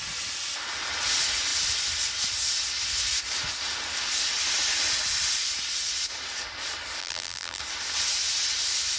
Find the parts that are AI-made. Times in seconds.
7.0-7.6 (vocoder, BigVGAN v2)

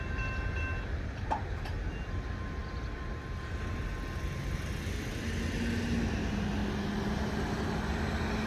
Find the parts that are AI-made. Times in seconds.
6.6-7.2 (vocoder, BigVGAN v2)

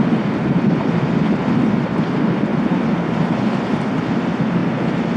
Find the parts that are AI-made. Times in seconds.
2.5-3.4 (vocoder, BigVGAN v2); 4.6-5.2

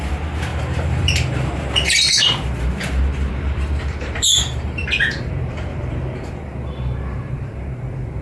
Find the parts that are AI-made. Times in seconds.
0.0-8.2 (vocoder, BigVGAN v2)

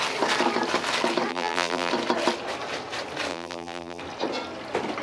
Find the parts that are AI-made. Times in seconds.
1.3-1.9 (vocoder, BigVGAN v2); 3.3-4.0

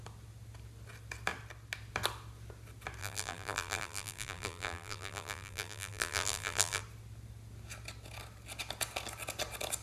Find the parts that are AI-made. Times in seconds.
3.0-6.8 (vocoder, BigVGAN v2)